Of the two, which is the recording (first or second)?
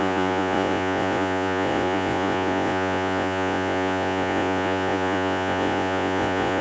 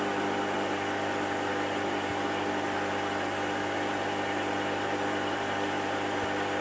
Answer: second